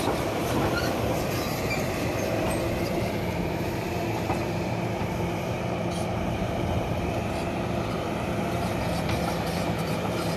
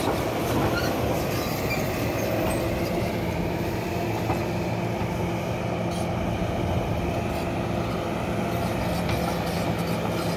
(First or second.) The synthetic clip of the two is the first